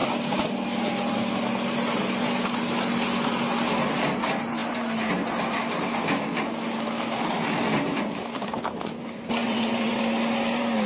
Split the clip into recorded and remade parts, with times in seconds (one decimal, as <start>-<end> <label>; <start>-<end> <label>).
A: 0.0-9.4 recorded; 9.4-10.0 remade; 10.0-10.9 recorded